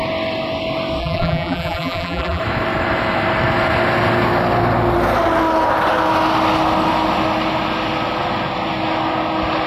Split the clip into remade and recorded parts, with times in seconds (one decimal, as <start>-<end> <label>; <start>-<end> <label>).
0.0-1.0 recorded; 1.0-2.4 remade; 2.4-9.7 recorded